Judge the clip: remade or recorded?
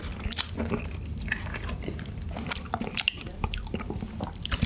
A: remade